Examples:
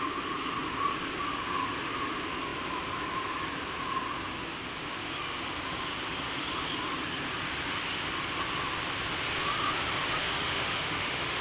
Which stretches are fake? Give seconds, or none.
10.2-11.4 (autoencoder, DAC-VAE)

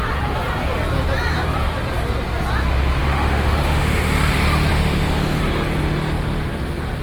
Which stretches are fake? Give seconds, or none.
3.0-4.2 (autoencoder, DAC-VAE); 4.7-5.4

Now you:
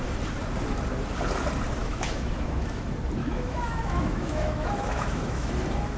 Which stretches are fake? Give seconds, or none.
1.8-2.8 (autoencoder, DAC-VAE); 3.2-5.5

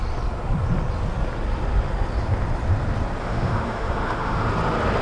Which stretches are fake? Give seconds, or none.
3.2-4.5 (autoencoder, DAC-VAE)

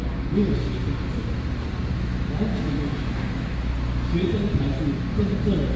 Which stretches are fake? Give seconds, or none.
2.5-3.7 (autoencoder, DAC-VAE)